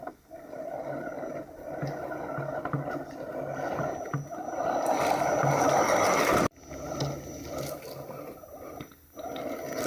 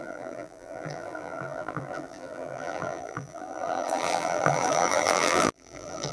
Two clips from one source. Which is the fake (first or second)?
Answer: second